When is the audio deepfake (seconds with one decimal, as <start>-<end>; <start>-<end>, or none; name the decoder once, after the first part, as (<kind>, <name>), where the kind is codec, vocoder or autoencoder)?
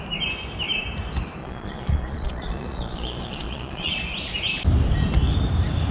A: 1.4-3.9 (vocoder, Vocos)